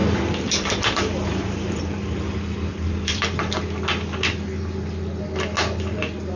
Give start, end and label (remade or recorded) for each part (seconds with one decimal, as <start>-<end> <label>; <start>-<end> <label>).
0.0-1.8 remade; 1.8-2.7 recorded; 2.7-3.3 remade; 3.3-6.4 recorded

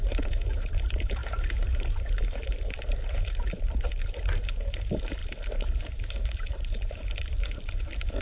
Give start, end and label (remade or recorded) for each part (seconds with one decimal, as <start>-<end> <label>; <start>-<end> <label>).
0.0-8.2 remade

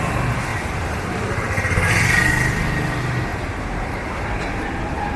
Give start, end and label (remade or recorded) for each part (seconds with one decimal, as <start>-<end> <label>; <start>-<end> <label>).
0.0-0.5 recorded; 0.5-1.9 remade; 1.9-3.3 recorded; 3.3-4.8 remade; 4.8-5.2 recorded